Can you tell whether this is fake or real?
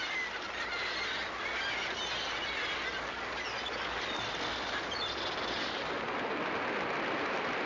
real